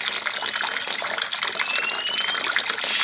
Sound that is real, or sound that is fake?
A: real